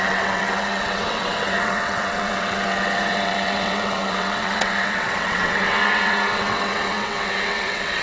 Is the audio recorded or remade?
remade